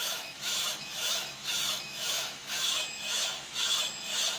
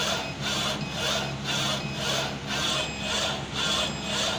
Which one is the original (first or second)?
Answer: second